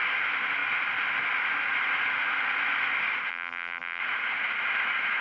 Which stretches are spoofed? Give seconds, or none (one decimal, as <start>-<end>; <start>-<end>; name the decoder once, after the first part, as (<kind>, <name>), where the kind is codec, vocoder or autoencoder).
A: 3.3-4.0 (vocoder, BigVGAN v2)